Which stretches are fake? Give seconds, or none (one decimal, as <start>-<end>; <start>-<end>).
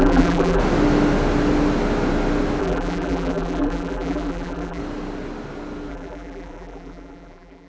0.0-0.6; 2.6-4.8; 5.9-7.7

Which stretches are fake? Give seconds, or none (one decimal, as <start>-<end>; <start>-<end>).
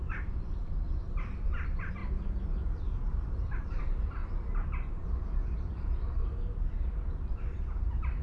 0.0-2.0; 3.4-4.2; 4.9-6.2; 6.8-8.2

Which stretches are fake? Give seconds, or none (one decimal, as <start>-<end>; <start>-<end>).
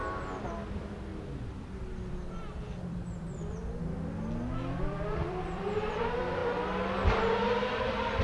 0.7-3.6; 4.8-6.4; 7.4-8.2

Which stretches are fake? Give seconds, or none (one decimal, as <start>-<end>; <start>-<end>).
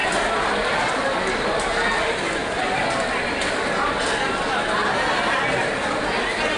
0.0-0.9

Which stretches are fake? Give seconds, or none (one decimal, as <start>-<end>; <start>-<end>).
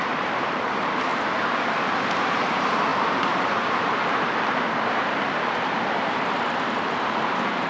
0.0-1.1; 2.2-7.7